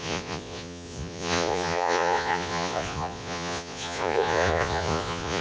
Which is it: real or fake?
fake